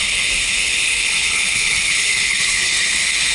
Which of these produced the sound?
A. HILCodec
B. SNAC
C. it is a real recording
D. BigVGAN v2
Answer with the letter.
A